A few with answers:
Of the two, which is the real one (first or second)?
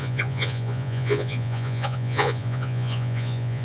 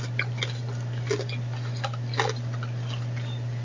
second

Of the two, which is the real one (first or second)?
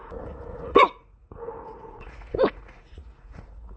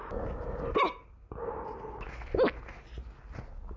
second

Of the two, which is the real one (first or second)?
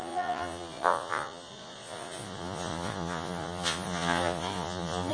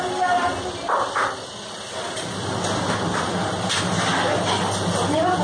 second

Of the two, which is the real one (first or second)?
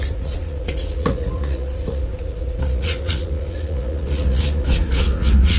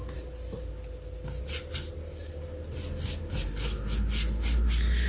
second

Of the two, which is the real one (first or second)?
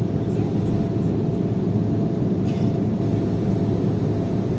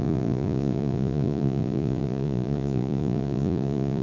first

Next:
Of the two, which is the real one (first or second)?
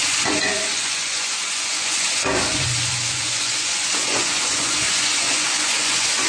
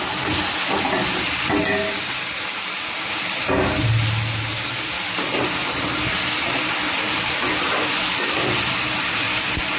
second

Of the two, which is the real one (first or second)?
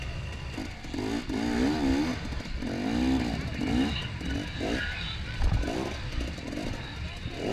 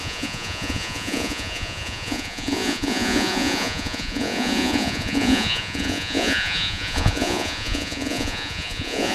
first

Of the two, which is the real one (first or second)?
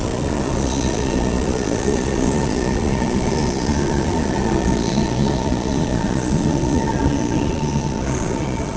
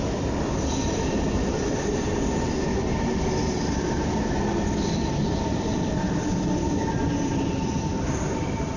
second